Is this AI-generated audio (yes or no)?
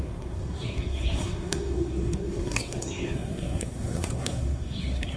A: yes